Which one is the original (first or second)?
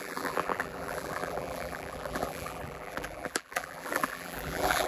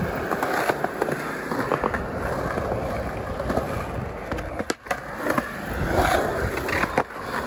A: second